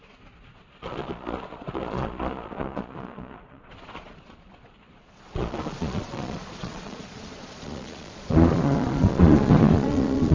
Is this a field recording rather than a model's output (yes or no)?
no